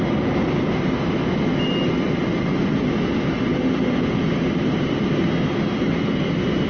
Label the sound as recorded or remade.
recorded